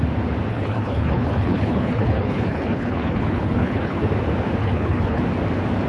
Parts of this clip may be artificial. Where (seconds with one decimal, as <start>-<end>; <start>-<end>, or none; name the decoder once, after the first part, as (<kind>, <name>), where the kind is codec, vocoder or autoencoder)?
0.5-4.0 (codec, HILCodec); 4.6-5.2